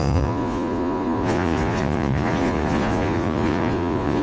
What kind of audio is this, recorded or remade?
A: remade